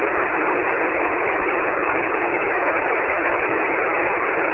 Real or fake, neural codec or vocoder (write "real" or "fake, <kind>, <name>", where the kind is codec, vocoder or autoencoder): fake, codec, HILCodec